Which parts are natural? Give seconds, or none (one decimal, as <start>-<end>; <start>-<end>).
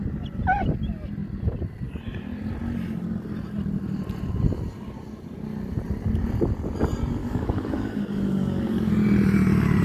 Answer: 0.0-7.2; 8.9-9.8